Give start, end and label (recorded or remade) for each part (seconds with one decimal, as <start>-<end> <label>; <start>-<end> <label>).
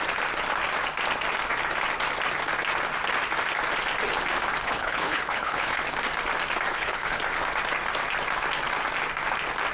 0.0-4.6 recorded; 4.6-5.8 remade; 5.8-6.7 recorded; 6.7-7.2 remade; 7.2-9.7 recorded